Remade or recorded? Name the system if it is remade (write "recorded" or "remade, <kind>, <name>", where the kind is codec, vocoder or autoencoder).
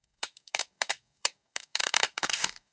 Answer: remade, codec, DAC